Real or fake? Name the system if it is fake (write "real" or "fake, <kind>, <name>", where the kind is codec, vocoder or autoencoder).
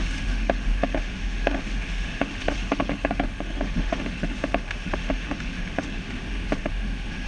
fake, autoencoder, DAC-VAE